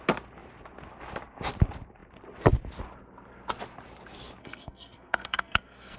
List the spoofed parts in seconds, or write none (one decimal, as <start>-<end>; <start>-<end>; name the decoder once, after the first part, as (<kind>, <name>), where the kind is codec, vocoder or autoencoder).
4.4-6.0 (codec, SNAC)